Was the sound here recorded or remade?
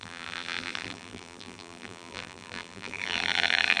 remade